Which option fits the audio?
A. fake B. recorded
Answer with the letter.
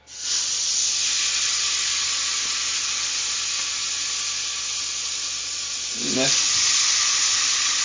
B